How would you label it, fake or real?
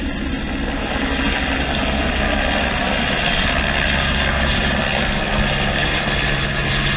real